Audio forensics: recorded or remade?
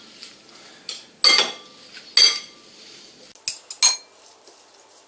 recorded